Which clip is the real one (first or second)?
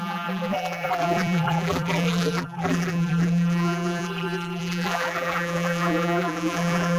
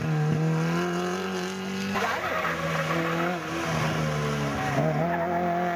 second